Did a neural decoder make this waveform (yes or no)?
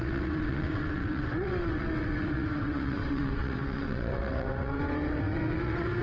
yes